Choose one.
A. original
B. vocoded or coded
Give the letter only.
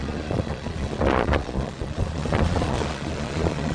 B